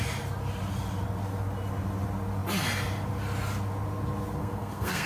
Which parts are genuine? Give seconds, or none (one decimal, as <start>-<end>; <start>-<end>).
0.0-4.4